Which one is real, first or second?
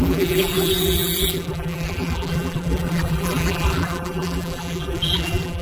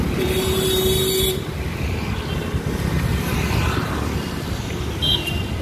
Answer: second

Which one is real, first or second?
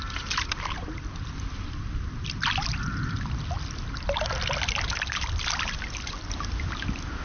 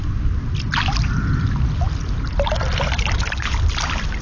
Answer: second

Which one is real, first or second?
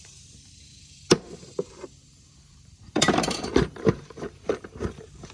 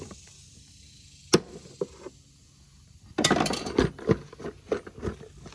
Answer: second